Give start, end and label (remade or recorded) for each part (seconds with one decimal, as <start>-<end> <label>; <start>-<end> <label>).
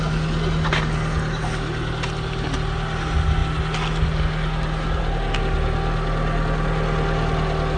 0.0-7.8 recorded